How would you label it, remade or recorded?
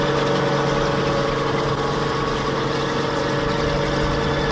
recorded